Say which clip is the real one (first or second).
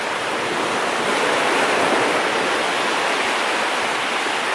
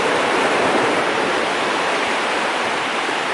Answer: first